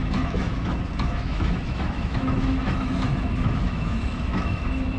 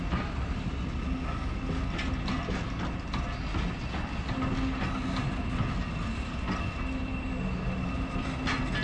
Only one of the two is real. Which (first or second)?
second